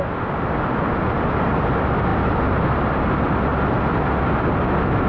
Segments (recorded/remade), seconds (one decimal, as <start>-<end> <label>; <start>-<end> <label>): 0.0-5.1 recorded